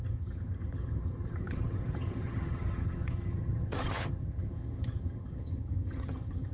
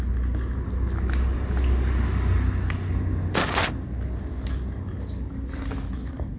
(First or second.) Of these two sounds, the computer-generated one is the first